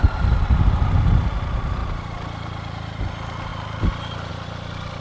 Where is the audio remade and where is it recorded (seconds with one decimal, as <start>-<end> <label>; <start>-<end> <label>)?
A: 0.0-5.0 recorded